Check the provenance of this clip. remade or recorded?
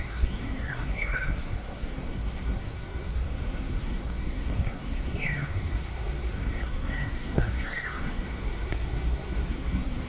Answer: remade